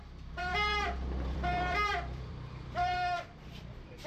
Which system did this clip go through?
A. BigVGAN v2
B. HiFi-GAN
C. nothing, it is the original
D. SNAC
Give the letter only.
A